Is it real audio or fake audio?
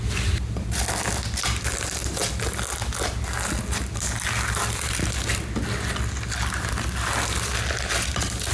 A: real